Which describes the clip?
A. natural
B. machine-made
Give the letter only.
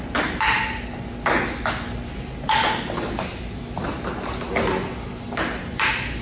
A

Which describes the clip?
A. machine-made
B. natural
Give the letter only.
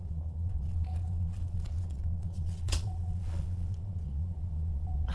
A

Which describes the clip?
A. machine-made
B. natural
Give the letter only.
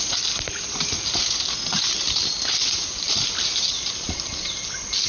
B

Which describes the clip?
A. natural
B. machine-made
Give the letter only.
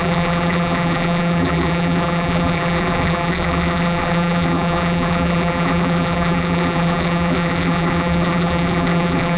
B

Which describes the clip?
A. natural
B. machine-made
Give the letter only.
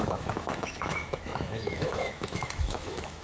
B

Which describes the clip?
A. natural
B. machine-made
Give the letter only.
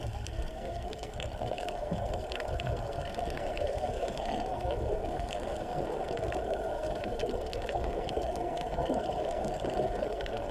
B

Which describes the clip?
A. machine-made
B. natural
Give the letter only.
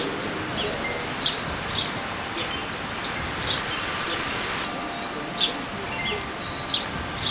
A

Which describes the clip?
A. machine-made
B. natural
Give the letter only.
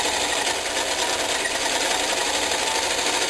B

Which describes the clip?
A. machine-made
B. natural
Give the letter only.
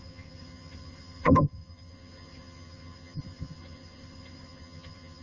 A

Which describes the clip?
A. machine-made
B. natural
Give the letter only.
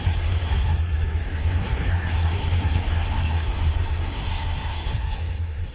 A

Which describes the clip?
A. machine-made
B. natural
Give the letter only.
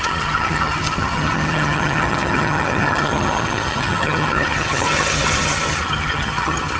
A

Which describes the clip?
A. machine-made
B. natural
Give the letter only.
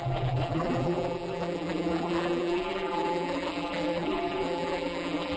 A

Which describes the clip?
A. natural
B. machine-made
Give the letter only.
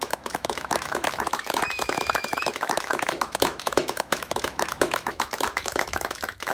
B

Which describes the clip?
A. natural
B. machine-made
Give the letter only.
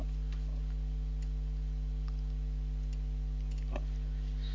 A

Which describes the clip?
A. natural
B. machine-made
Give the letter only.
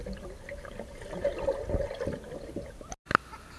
A